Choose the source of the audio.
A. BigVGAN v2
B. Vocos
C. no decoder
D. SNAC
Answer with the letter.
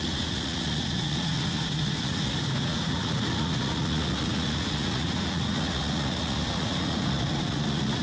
B